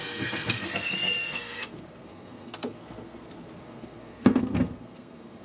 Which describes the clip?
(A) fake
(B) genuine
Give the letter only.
A